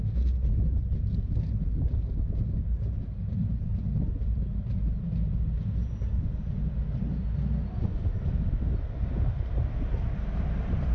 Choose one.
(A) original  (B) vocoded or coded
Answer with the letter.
A